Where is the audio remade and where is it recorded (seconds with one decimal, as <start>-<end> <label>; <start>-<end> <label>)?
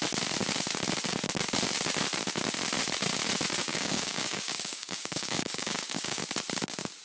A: 0.0-3.7 recorded; 3.7-6.2 remade; 6.2-7.0 recorded